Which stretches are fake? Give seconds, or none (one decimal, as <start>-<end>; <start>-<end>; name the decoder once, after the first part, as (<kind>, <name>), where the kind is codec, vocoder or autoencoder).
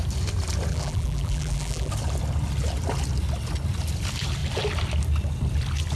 0.7-1.9 (vocoder, BigVGAN v2)